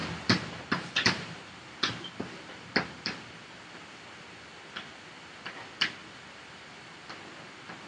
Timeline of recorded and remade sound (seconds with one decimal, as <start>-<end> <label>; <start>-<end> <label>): 0.0-7.9 recorded